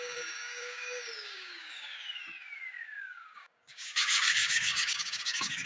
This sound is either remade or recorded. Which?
remade